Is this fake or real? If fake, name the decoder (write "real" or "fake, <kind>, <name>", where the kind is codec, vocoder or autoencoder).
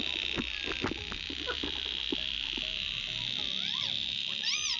real